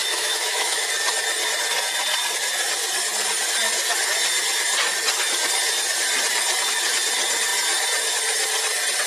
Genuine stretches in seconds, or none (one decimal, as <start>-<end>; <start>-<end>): 0.9-9.1